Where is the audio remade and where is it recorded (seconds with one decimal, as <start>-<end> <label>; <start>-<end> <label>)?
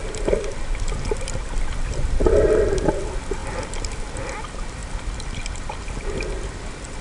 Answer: 0.0-3.0 remade; 3.0-3.4 recorded; 3.4-4.0 remade; 4.0-4.8 recorded; 4.8-5.8 remade; 5.8-7.0 recorded